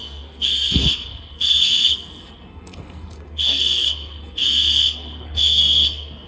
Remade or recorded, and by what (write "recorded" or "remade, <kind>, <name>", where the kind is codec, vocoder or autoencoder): remade, codec, SNAC